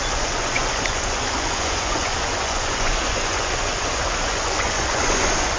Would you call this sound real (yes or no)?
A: no